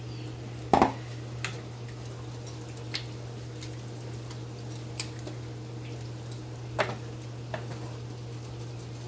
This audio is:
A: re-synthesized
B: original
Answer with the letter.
B